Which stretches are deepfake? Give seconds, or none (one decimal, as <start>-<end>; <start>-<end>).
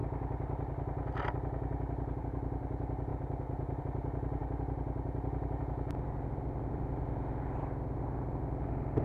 none